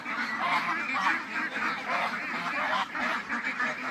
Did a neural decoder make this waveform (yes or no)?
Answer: no